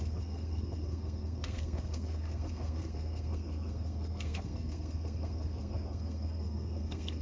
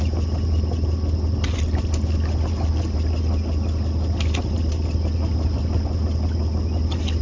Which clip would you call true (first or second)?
second